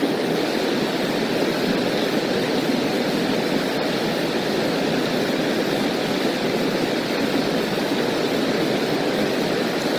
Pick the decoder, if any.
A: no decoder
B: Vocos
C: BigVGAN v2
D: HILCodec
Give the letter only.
A